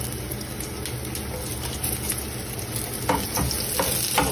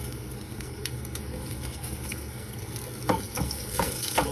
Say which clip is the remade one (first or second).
second